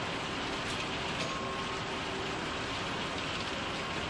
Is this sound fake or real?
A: real